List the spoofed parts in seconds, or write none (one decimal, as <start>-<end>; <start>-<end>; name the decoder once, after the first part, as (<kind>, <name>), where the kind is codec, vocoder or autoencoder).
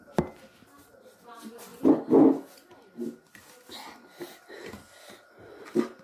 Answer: none